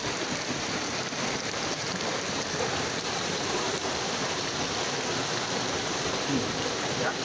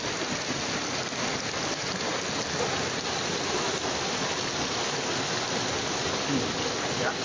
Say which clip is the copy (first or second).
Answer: first